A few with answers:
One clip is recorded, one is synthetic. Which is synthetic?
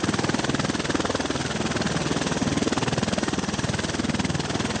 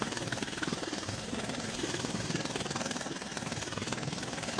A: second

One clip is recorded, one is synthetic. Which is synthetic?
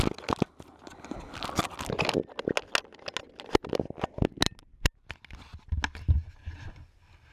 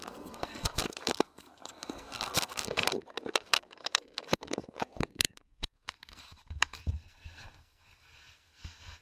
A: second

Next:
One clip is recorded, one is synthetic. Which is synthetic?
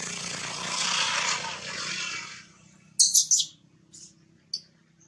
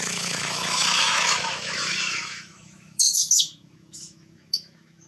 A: second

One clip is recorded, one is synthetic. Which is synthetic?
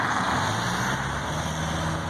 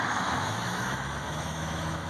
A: second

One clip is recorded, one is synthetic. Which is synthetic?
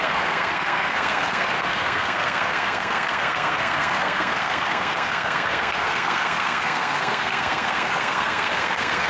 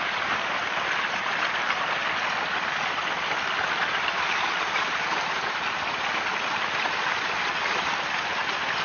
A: first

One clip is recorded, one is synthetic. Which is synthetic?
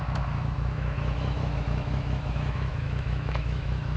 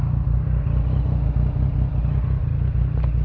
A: first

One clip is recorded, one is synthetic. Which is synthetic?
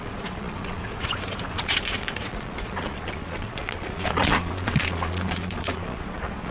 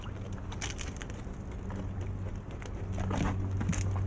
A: first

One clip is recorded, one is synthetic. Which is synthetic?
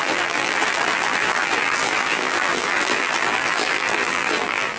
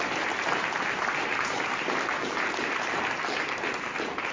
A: first